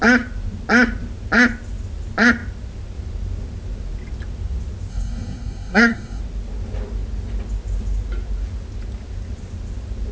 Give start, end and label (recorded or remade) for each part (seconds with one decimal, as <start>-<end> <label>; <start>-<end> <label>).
0.0-4.9 recorded; 4.9-6.2 remade; 6.2-10.1 recorded